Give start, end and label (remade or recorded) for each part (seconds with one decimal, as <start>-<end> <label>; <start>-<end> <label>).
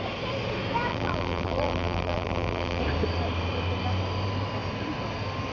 0.0-0.9 recorded; 0.9-2.8 remade; 2.8-5.5 recorded